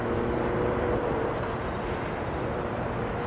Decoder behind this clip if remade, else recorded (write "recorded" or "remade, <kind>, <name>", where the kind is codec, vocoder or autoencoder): recorded